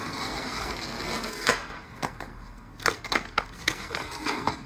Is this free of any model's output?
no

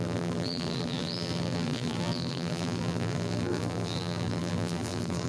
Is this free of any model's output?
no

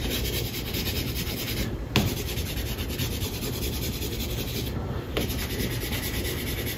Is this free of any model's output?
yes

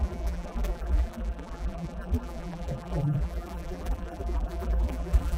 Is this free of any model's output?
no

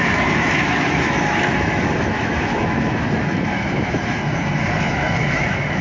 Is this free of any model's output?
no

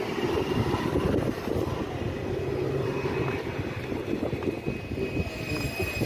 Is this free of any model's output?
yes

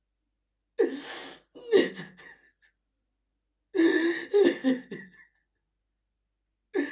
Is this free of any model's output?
yes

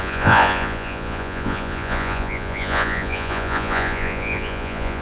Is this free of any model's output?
no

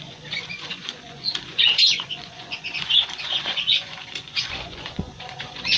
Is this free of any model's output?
no